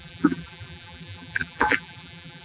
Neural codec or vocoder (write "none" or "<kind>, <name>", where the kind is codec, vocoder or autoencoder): vocoder, BigVGAN v2